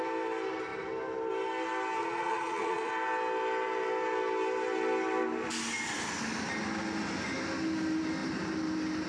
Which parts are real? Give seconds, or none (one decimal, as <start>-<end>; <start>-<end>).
0.0-2.0; 2.9-9.1